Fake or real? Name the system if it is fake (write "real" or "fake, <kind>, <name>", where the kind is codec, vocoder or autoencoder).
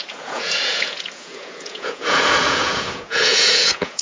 fake, vocoder, Vocos